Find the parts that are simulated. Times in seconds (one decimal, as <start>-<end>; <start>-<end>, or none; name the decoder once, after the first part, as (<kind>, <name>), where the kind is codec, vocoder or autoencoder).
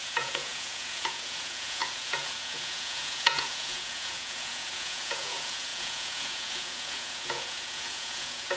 0.0-8.6 (vocoder, Vocos)